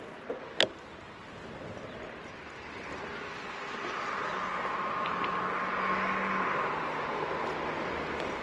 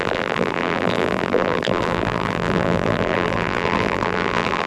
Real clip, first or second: first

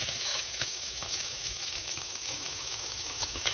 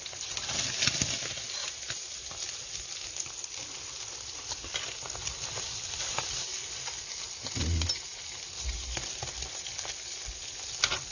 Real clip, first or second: second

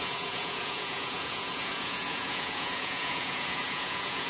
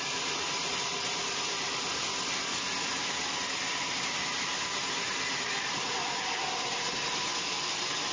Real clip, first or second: second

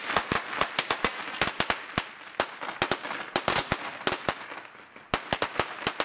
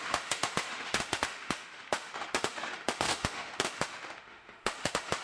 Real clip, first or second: first